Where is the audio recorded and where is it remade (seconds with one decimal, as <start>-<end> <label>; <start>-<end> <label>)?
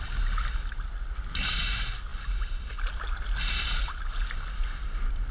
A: 0.0-5.3 recorded